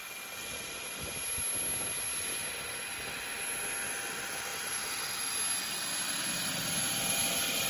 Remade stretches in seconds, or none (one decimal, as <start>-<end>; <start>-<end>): 4.5-5.3